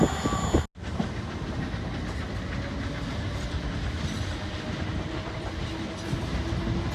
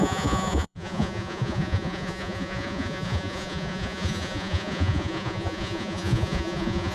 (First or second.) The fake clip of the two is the second